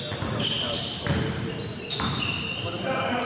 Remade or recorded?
remade